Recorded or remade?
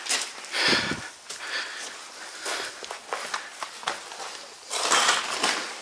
recorded